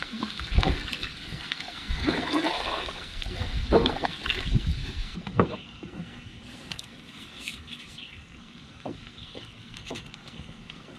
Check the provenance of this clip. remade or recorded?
remade